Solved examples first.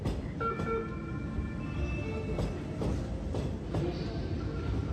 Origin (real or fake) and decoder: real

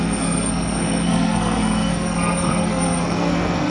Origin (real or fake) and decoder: fake, codec, SNAC